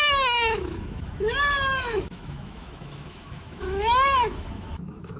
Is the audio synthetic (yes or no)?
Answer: yes